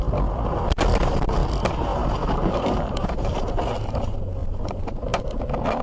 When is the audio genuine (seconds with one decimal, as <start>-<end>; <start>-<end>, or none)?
0.0-1.9; 3.5-4.4; 5.2-5.8